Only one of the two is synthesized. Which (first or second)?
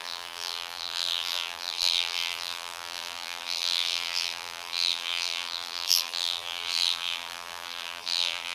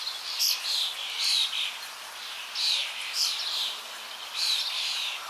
first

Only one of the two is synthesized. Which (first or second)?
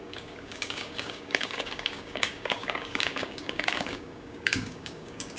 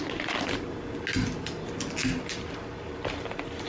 first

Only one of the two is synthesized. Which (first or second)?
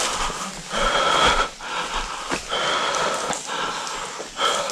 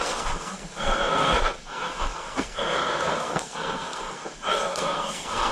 second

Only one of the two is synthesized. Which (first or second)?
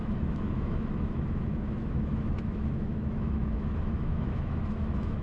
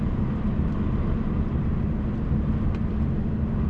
first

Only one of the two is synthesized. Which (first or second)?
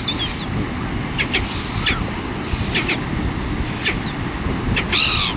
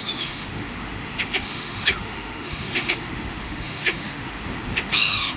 second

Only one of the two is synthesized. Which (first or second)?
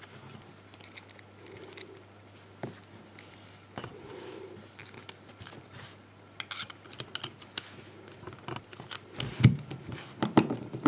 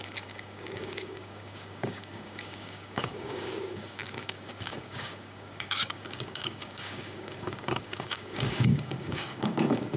second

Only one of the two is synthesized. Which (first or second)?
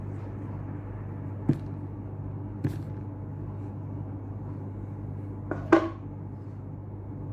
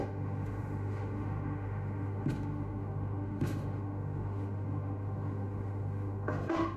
second